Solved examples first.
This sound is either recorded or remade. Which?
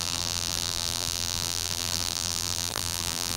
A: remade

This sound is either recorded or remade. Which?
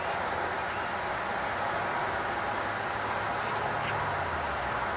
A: recorded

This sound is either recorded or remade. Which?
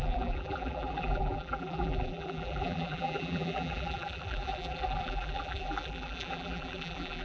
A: remade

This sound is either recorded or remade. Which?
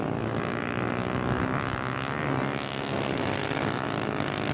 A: recorded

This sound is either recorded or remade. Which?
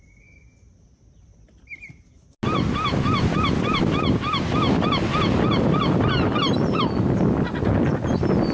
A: recorded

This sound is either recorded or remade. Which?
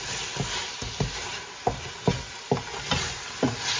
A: recorded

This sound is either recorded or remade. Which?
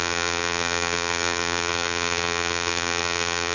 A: remade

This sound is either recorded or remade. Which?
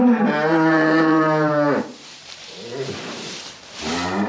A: remade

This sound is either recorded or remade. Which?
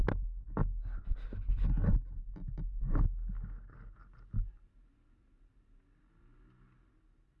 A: recorded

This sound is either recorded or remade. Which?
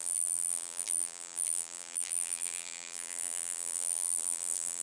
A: remade